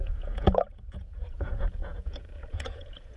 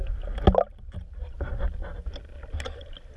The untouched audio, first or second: second